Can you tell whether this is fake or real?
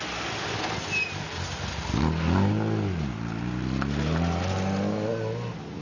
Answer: real